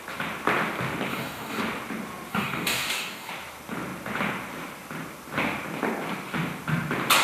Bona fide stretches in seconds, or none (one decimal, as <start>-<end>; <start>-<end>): 0.0-1.1; 1.6-2.3; 3.3-7.2